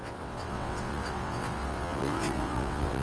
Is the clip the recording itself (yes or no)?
no